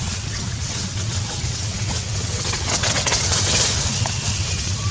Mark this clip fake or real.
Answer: fake